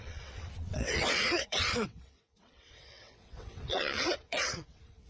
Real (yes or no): no